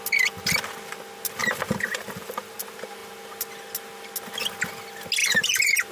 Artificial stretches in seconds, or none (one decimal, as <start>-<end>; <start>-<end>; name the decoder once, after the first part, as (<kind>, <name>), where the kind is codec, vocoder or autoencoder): 1.4-2.6 (vocoder, BigVGAN v2); 5.2-5.9